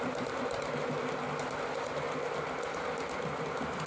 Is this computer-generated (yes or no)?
no